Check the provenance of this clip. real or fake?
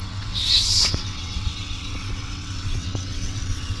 fake